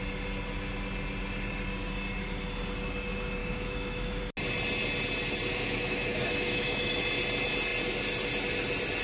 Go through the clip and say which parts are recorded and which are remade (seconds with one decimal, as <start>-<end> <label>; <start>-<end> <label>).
0.0-3.4 recorded; 3.4-4.2 remade; 4.2-5.5 recorded; 5.5-7.0 remade; 7.0-9.0 recorded